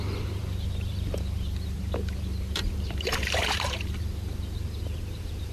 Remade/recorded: remade